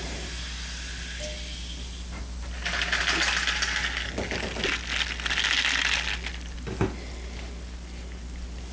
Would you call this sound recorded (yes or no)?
yes